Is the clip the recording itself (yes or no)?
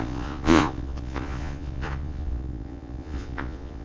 no